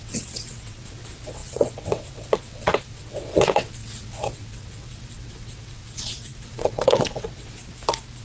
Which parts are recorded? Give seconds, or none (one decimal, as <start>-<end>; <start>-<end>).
7.6-8.2